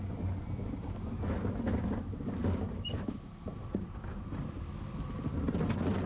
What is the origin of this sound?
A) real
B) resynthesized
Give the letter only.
A